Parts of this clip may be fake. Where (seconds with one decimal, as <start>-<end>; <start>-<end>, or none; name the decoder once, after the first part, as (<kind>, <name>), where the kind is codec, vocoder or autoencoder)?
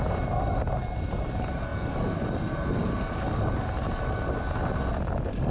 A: none